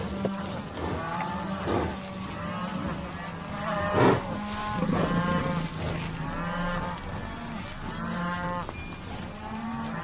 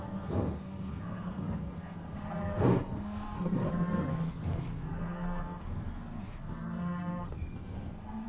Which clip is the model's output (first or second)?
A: second